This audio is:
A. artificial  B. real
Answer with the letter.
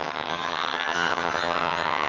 A